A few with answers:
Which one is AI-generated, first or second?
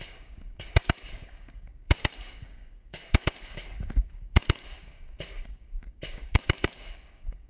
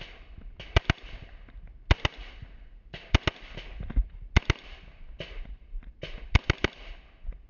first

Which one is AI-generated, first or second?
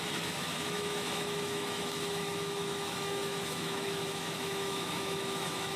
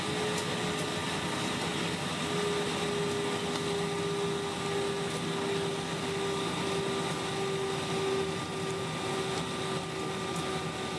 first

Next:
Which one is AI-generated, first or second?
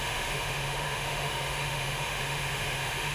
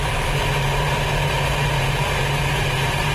first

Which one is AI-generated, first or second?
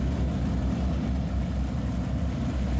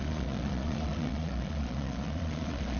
second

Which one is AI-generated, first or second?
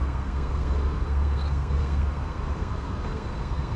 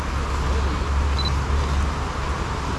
first